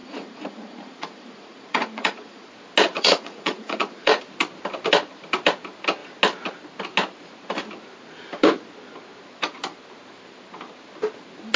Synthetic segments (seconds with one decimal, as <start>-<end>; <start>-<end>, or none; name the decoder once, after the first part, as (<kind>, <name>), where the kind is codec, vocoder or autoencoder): 0.0-2.5 (vocoder, Vocos); 2.9-4.2